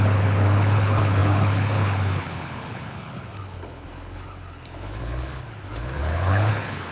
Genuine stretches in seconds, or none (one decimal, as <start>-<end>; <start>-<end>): none